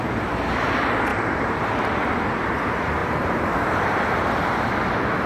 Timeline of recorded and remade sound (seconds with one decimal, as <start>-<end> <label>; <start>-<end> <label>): 0.0-1.1 recorded; 1.1-1.6 remade; 1.6-3.0 recorded; 3.0-4.3 remade; 4.3-5.3 recorded